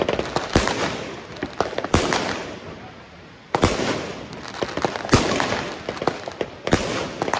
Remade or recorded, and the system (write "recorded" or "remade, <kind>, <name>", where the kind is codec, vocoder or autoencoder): recorded